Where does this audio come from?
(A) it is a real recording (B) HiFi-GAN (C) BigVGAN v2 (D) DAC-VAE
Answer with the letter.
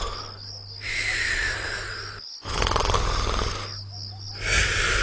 A